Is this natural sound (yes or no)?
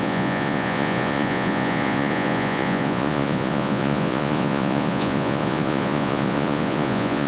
no